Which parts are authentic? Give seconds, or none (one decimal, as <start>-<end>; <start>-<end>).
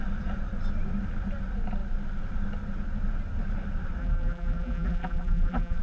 0.0-4.0